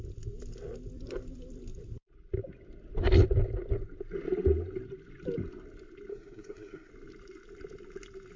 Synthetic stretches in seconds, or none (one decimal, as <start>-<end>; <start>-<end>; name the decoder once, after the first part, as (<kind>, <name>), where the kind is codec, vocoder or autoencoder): 6.1-6.9 (codec, SNAC)